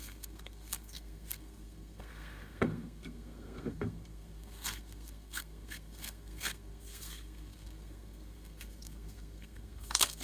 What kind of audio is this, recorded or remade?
remade